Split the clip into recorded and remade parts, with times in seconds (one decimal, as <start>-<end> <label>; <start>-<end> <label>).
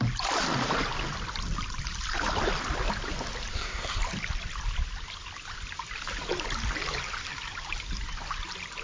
0.0-3.5 recorded; 3.5-4.0 remade; 4.0-8.8 recorded